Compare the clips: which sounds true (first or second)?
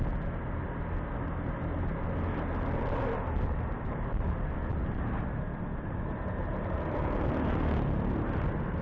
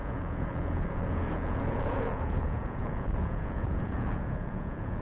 first